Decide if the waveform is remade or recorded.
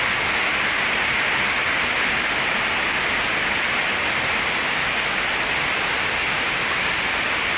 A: recorded